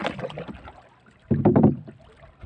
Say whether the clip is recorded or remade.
recorded